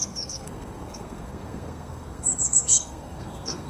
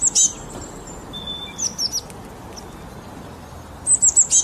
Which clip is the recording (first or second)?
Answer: second